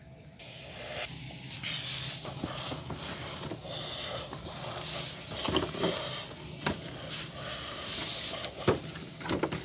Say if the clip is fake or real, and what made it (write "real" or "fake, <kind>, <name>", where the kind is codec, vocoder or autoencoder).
real